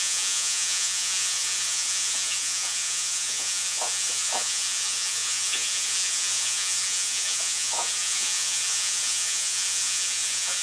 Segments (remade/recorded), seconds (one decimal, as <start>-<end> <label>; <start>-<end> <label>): 0.0-10.6 remade